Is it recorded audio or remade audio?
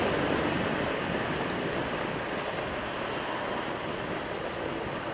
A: recorded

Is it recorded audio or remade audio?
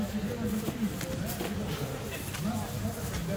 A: recorded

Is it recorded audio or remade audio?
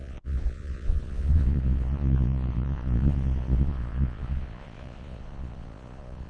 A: remade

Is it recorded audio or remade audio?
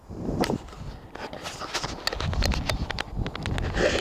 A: recorded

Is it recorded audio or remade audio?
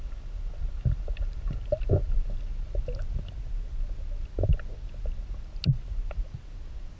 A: recorded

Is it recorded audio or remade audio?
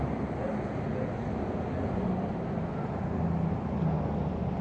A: recorded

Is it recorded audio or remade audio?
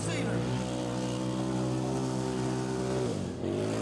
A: recorded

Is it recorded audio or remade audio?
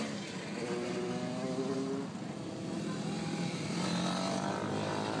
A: remade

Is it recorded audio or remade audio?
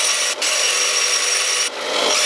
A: remade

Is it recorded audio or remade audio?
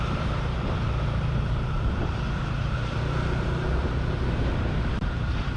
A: remade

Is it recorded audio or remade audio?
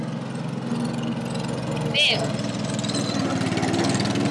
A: recorded